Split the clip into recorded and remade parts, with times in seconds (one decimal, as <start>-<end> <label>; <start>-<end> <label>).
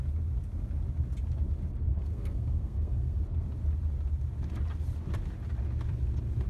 0.0-1.9 recorded; 1.9-3.2 remade; 3.2-6.5 recorded